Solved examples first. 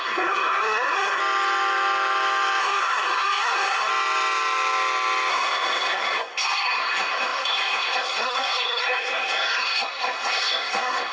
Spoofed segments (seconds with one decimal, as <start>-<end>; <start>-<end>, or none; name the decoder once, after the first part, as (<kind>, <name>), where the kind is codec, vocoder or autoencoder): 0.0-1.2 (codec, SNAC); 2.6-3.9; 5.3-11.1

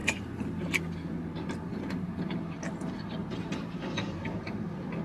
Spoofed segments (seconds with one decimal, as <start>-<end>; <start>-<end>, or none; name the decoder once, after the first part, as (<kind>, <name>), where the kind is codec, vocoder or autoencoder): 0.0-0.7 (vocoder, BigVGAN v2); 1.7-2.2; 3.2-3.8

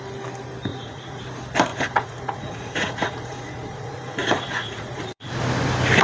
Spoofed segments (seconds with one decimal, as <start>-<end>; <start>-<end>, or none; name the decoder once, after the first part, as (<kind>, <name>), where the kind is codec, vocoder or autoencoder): 0.7-1.2 (vocoder, Vocos); 1.7-5.3

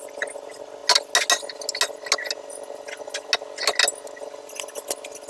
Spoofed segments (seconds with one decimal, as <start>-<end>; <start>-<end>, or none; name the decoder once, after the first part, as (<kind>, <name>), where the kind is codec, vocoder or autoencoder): none

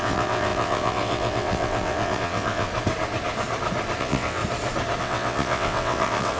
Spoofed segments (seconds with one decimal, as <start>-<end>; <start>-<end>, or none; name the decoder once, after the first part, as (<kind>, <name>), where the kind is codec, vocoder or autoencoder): 0.0-2.7 (vocoder, WaveNeXt); 4.0-4.4; 5.0-6.4

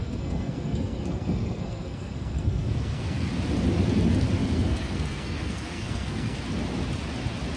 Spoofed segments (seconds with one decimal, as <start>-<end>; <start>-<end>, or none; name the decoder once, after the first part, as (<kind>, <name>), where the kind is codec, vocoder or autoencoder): 0.0-3.3 (codec, SNAC); 4.4-6.4

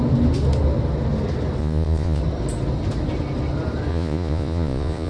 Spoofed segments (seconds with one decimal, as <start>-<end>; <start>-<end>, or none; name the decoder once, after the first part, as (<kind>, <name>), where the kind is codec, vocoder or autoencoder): 1.6-2.2 (vocoder, Vocos); 3.9-5.1